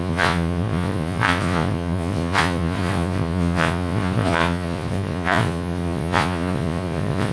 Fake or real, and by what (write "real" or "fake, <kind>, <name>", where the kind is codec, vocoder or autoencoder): fake, vocoder, Vocos